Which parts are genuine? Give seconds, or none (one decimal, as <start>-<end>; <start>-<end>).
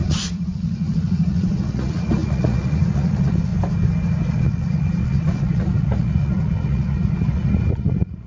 3.5-4.3